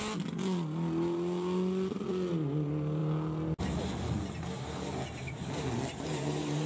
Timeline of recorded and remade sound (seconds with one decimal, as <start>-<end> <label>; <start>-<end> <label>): 0.0-6.7 recorded